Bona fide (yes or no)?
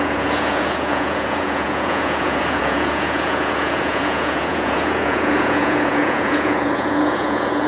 no